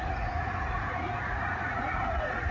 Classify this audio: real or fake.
fake